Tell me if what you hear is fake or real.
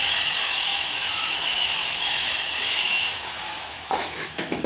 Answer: fake